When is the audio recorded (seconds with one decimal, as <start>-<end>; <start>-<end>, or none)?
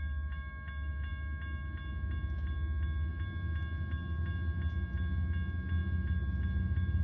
0.0-7.0